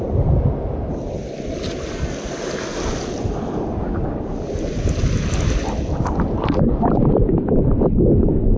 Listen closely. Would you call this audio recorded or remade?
recorded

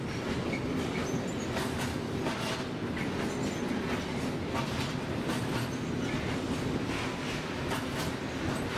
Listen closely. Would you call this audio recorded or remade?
recorded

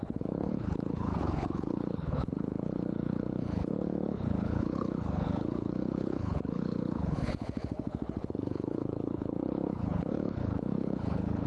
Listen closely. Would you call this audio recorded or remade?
remade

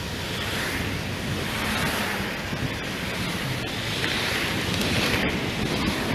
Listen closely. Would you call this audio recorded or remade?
recorded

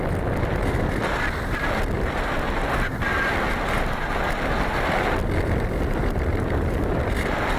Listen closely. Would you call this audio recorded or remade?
recorded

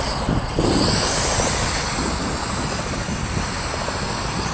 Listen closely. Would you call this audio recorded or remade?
recorded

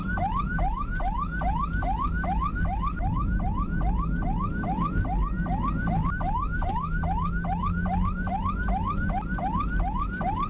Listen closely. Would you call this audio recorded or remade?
recorded